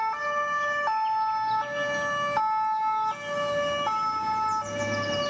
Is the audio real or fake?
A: real